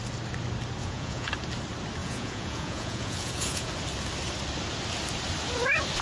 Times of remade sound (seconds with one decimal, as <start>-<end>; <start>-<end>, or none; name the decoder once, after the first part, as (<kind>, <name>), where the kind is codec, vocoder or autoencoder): 0.8-1.3 (vocoder, Vocos); 2.0-3.7